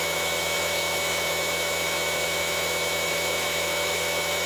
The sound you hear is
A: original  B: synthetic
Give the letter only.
B